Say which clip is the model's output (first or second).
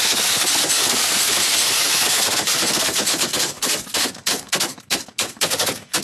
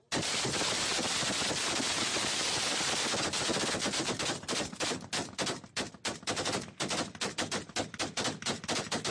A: first